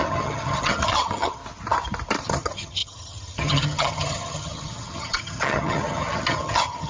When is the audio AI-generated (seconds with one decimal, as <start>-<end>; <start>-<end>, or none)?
0.0-1.4; 2.2-6.9